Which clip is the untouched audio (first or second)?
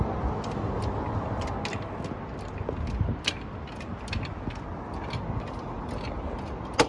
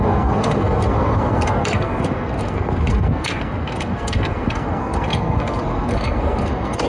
first